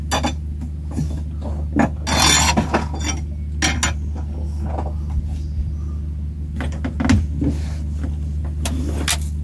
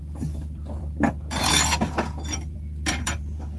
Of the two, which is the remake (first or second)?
second